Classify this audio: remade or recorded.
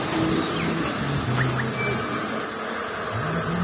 recorded